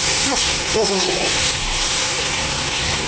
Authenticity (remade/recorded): remade